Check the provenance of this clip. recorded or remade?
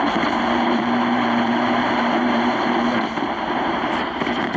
remade